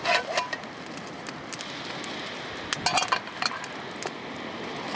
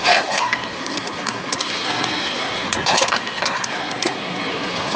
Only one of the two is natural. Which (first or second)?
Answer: first